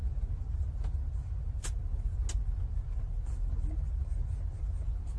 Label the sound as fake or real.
real